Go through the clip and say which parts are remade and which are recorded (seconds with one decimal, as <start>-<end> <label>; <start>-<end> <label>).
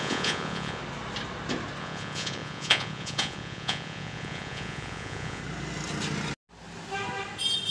0.0-0.8 remade; 0.8-1.8 recorded; 1.8-5.4 remade; 5.4-7.7 recorded